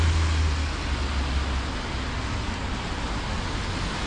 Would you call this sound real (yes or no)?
yes